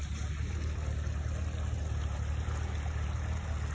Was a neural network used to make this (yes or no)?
no